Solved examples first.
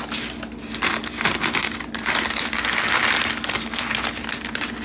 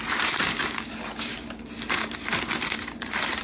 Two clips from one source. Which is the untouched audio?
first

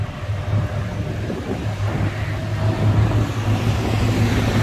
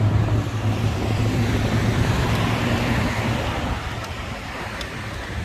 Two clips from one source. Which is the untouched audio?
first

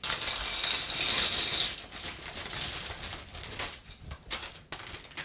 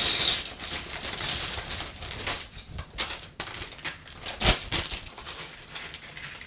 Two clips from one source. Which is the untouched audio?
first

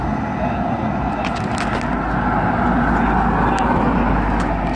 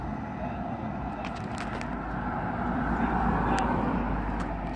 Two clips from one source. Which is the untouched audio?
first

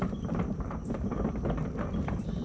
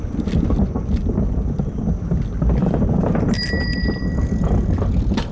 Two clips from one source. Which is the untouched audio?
second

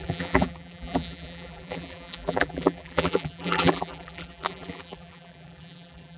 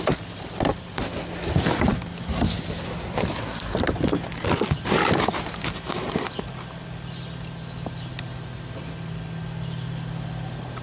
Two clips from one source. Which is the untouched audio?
second